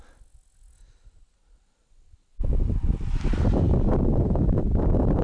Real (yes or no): yes